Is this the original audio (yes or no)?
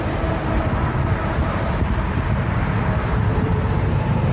no